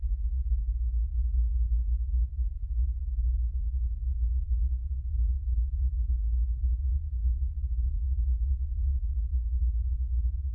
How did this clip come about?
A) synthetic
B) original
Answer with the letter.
B